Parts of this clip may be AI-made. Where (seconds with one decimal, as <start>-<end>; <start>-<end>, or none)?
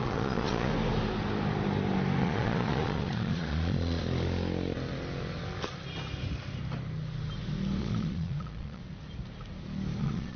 0.0-0.7; 2.2-4.0; 7.8-8.8; 10.0-10.4